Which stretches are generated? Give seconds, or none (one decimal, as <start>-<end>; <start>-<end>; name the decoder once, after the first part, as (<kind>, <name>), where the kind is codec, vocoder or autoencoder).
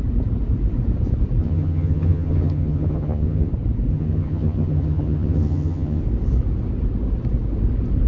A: 1.4-3.5 (vocoder, HiFi-GAN); 3.9-6.0